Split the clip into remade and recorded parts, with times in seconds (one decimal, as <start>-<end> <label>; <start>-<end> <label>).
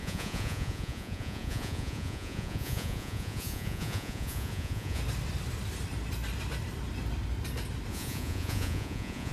0.0-5.0 remade; 5.0-7.9 recorded; 7.9-9.3 remade